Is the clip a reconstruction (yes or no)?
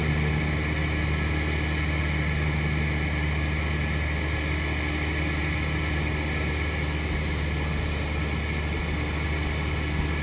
no